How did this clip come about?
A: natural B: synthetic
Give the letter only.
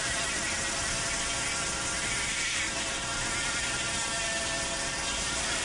A